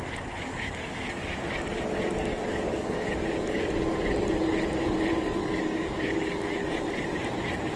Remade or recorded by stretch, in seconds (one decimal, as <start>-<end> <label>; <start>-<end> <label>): 0.0-0.4 recorded; 0.4-1.4 remade; 1.4-2.2 recorded; 2.2-3.7 remade; 3.7-5.4 recorded; 5.4-6.8 remade; 6.8-7.8 recorded